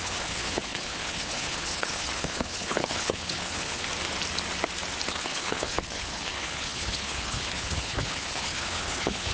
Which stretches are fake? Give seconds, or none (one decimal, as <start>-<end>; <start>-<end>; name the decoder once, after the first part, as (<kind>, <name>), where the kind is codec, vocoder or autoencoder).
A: 0.0-3.8 (codec, HILCodec); 5.1-9.3